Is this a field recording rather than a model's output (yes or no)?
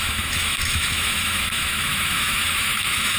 no